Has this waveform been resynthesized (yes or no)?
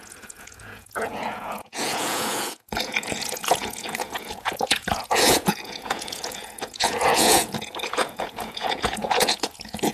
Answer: yes